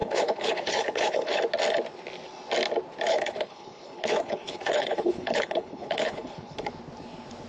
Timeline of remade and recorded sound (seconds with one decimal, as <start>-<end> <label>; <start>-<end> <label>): 0.0-1.4 remade; 1.4-3.1 recorded; 3.1-6.7 remade; 6.7-7.5 recorded